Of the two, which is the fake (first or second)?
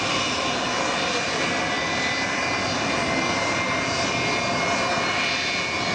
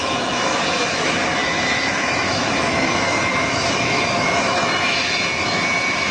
second